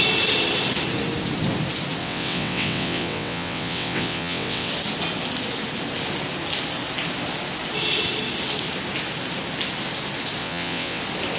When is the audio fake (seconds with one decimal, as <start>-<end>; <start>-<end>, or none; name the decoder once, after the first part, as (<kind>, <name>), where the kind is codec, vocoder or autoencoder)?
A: 2.0-4.7 (vocoder, WaveNeXt); 10.4-11.0